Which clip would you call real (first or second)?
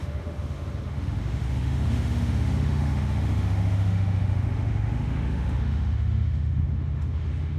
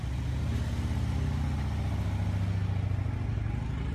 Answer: second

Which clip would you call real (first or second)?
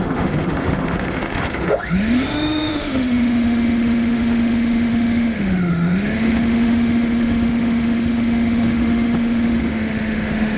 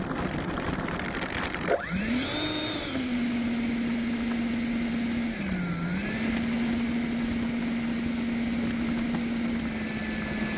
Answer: second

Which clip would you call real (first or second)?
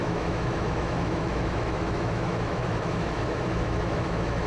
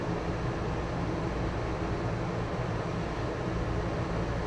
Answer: second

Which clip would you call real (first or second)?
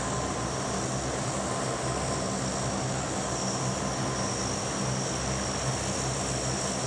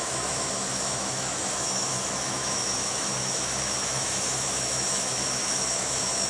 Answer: first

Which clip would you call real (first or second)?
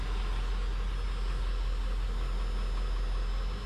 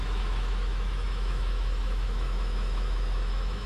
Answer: first